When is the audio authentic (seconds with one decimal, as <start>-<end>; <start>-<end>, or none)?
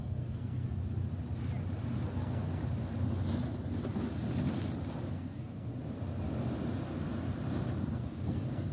0.8-2.1; 2.6-5.1; 5.7-7.8